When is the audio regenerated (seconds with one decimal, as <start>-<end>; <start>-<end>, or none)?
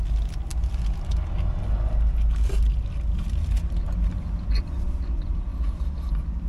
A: none